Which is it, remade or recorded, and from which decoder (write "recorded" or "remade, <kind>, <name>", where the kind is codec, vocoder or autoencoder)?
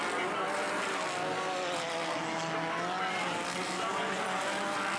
recorded